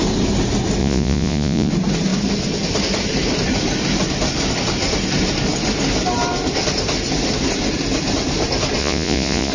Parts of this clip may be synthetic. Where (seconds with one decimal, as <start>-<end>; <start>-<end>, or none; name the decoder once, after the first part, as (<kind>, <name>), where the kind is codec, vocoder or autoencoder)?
0.8-1.7 (vocoder, Vocos); 8.8-9.5